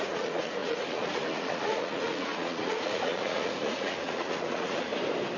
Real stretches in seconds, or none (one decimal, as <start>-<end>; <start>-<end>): 4.9-5.4

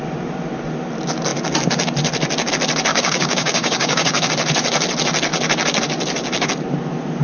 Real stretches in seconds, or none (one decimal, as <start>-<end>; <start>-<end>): 0.0-2.9; 4.3-7.2

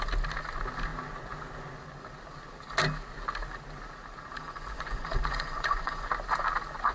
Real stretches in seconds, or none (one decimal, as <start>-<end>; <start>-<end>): 0.0-4.3; 6.1-6.9

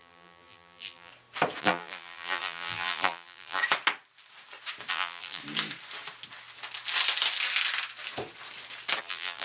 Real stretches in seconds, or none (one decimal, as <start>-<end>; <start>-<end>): 1.1-1.6; 3.6-4.9; 5.4-9.0

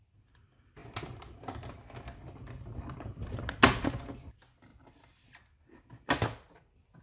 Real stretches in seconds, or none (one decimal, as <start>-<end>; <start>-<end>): 0.0-7.0

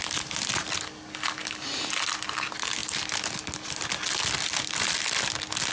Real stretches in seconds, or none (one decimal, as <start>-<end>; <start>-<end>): 0.0-5.7

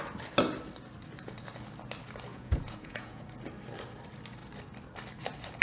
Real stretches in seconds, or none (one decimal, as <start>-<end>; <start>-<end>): 0.0-2.3; 3.2-5.6

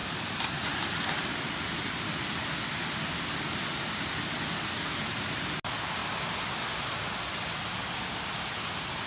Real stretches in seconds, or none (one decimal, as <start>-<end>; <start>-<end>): 0.0-9.1